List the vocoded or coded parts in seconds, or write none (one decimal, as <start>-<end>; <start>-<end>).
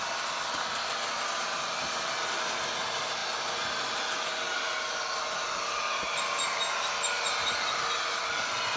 none